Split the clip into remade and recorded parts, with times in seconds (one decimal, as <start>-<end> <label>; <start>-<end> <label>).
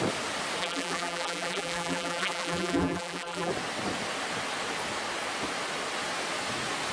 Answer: 0.0-0.6 recorded; 0.6-3.5 remade; 3.5-6.9 recorded